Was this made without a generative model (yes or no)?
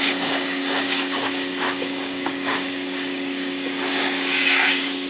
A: no